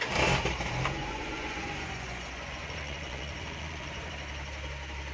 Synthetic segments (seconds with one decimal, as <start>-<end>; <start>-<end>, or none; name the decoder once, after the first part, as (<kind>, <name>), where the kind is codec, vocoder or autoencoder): 1.0-4.1 (vocoder, Vocos)